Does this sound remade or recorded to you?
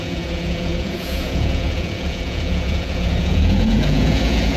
remade